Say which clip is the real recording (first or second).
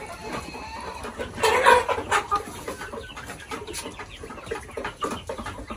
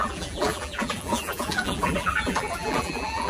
first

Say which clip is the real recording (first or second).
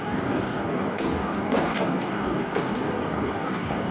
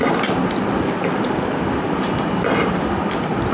second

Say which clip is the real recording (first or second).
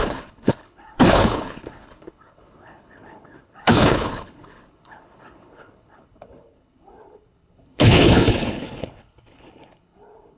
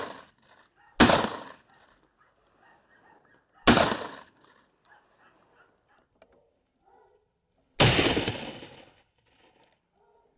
second